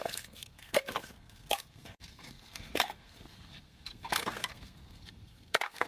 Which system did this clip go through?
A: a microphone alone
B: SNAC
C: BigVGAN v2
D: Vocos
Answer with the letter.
B